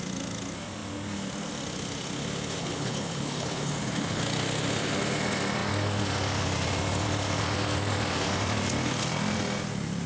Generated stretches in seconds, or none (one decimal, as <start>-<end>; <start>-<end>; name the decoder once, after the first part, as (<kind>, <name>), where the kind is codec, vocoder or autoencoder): 2.6-4.2 (codec, HILCodec)